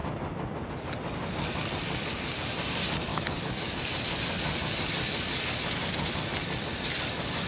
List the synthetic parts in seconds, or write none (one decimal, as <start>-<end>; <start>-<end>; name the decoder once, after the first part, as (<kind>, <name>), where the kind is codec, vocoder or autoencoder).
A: 3.1-3.7 (autoencoder, DAC-VAE)